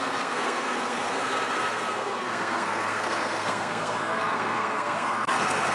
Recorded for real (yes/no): no